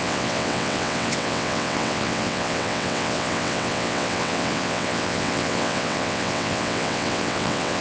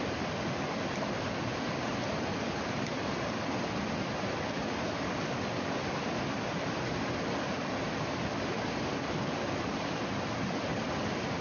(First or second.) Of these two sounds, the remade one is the first